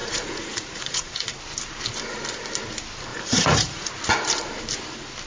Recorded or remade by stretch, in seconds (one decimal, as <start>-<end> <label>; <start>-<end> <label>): 0.0-1.3 remade; 1.3-3.1 recorded; 3.1-3.9 remade; 3.9-5.3 recorded